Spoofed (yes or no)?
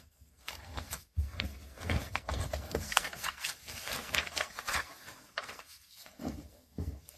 yes